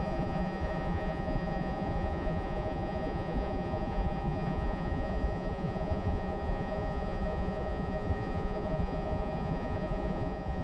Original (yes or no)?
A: no